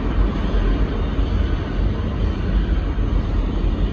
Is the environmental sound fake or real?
real